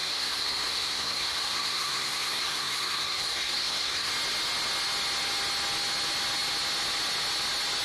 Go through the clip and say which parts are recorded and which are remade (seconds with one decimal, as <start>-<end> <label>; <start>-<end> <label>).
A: 0.0-4.1 remade; 4.1-7.8 recorded

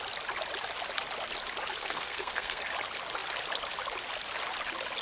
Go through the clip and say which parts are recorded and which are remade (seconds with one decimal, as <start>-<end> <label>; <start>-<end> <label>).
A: 0.0-1.8 recorded; 1.8-2.6 remade; 2.6-5.0 recorded